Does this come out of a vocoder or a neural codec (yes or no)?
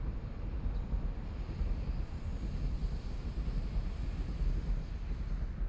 no